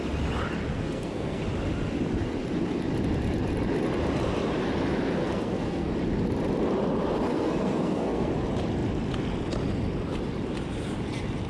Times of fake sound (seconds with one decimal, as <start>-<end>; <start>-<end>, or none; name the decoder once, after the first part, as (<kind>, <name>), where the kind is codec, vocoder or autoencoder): 0.7-1.4 (codec, SNAC); 5.2-5.9; 7.3-8.3